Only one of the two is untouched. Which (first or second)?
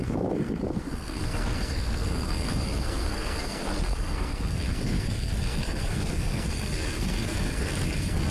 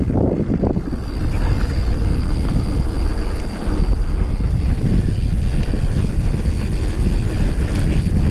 second